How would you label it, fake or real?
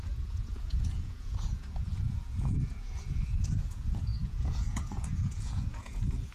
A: fake